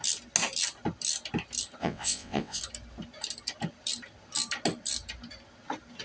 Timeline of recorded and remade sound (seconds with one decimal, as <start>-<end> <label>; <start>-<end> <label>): 0.0-1.8 recorded; 1.8-2.6 remade; 2.6-6.0 recorded